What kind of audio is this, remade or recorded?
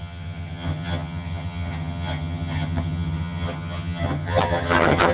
remade